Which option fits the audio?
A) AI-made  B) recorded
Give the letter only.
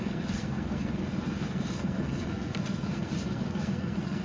A